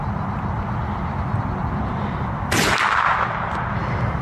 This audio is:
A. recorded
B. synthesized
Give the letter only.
A